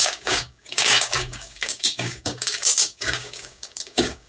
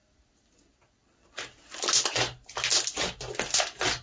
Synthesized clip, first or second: first